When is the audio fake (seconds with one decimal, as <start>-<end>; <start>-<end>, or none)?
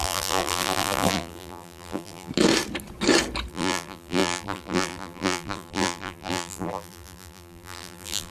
0.0-2.3; 3.5-8.3